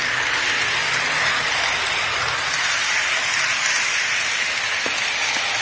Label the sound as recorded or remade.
recorded